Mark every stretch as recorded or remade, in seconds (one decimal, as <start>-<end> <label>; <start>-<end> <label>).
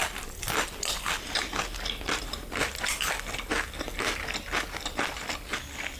0.0-6.0 recorded